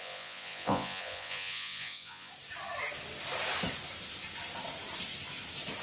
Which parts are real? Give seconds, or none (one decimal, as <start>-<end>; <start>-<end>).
2.3-5.8